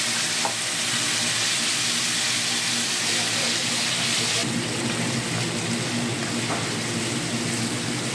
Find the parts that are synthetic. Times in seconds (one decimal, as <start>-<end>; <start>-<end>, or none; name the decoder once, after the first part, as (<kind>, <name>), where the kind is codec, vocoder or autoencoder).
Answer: none